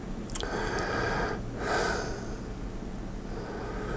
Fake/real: real